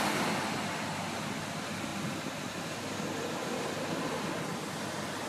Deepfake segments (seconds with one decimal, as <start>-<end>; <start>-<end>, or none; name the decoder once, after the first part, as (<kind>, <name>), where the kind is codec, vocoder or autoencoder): none

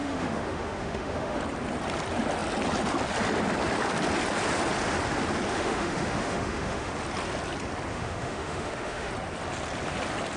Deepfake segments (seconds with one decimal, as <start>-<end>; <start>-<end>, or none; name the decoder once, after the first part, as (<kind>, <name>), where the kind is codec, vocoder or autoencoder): 0.0-1.4 (autoencoder, DAC-VAE); 5.5-6.9; 7.9-9.1

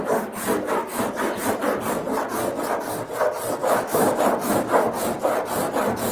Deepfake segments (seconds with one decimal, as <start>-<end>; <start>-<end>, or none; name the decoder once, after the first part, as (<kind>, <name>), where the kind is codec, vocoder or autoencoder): 3.6-4.2 (autoencoder, DAC-VAE)

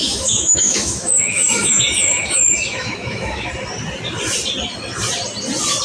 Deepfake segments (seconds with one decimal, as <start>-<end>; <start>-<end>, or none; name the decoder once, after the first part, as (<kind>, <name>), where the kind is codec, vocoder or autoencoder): 0.0-3.5 (autoencoder, DAC-VAE)